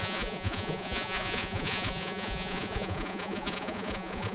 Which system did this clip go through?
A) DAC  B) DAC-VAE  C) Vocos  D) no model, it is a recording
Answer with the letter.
C